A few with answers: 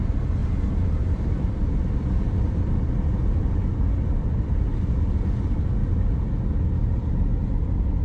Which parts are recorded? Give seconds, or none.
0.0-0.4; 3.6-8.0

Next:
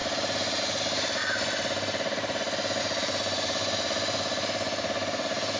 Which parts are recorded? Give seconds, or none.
1.2-2.8

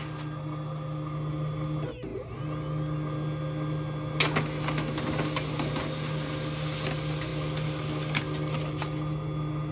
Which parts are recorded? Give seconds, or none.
0.0-9.7

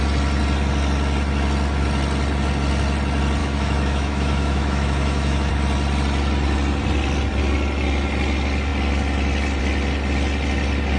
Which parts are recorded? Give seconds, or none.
0.0-3.4; 5.5-11.0